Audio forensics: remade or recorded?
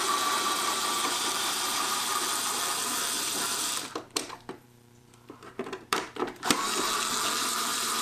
remade